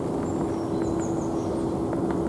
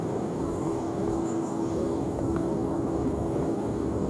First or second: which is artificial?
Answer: second